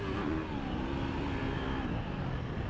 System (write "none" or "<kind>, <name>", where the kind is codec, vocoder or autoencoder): none